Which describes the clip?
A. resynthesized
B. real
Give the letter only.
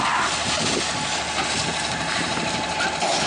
B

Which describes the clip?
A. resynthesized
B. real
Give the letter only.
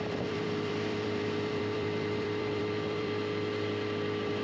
A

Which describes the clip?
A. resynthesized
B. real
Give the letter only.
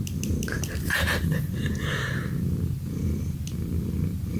B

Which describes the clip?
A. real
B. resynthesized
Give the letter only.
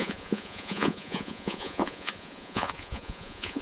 B